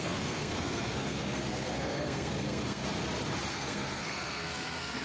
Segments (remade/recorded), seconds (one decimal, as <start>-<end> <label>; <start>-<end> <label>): 0.0-2.8 remade; 2.8-3.5 recorded; 3.5-5.0 remade